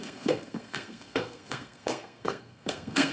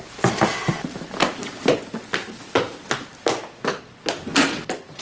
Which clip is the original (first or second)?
second